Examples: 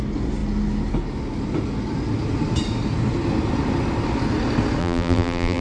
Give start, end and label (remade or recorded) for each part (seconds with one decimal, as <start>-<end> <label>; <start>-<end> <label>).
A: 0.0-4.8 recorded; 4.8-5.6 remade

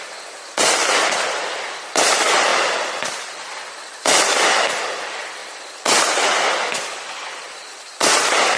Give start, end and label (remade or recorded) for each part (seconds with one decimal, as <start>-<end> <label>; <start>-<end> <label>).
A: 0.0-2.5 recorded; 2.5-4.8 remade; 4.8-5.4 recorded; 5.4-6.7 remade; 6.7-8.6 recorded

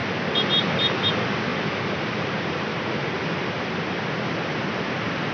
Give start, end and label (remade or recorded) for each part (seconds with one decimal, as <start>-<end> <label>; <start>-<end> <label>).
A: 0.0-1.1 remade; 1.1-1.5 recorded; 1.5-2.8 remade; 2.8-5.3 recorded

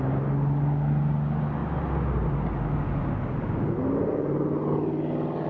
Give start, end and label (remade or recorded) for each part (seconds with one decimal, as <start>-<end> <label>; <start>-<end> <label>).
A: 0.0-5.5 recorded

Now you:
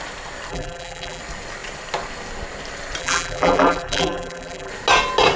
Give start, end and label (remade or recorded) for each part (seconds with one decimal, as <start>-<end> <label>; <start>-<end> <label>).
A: 0.0-0.5 recorded; 0.5-1.2 remade; 1.2-3.0 recorded; 3.0-4.7 remade; 4.7-5.4 recorded

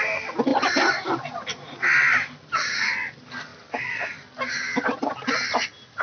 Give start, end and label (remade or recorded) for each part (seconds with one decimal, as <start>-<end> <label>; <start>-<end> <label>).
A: 0.0-0.5 recorded; 0.5-1.2 remade; 1.2-6.0 recorded

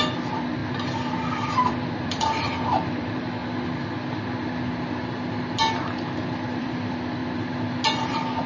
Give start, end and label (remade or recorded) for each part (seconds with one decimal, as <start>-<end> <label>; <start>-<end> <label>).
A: 0.0-0.6 remade; 0.6-1.5 recorded; 1.5-3.4 remade; 3.4-6.0 recorded; 6.0-7.2 remade; 7.2-8.1 recorded; 8.1-8.5 remade